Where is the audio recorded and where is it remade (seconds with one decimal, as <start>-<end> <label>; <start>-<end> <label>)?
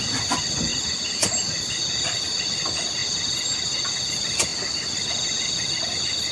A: 0.0-0.7 remade; 0.7-2.1 recorded; 2.1-3.0 remade; 3.0-4.1 recorded; 4.1-6.3 remade